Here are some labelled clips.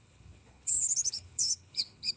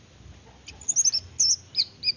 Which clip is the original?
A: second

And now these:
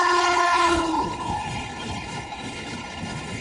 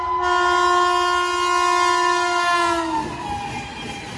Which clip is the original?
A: second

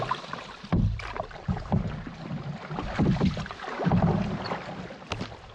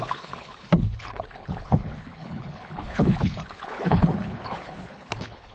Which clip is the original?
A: first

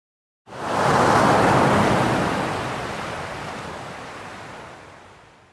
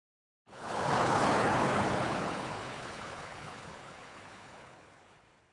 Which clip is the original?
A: first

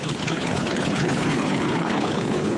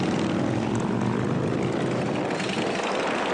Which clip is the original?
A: second